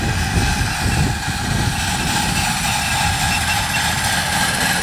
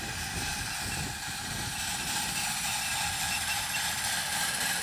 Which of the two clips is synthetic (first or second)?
second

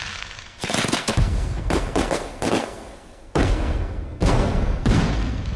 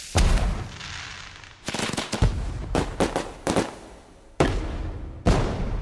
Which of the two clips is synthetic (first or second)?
first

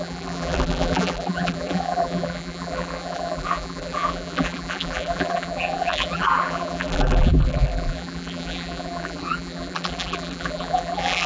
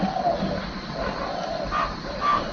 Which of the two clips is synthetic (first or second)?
first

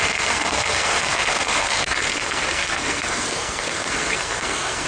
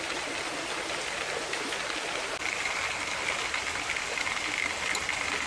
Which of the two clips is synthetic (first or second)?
first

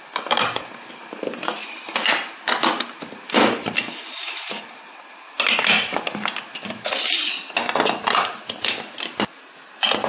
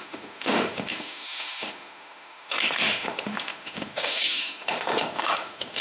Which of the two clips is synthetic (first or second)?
second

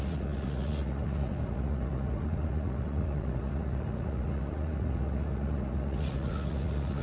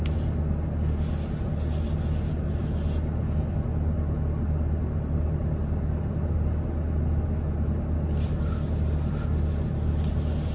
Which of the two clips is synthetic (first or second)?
first